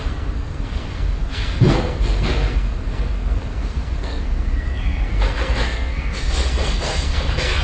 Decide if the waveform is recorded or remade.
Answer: remade